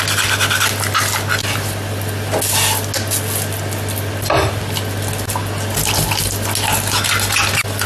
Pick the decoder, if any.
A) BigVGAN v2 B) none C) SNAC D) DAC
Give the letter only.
B